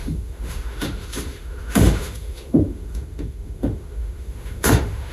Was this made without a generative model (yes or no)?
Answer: no